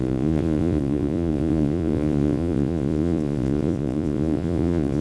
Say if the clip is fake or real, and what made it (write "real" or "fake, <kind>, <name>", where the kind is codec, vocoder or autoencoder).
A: fake, vocoder, Vocos